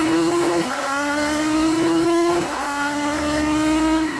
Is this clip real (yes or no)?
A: no